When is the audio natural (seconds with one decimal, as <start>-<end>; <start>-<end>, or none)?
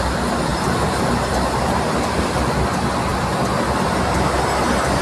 0.0-0.5; 1.8-5.0